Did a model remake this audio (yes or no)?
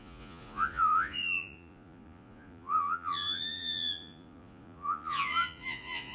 yes